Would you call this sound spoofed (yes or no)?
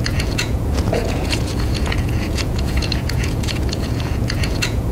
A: yes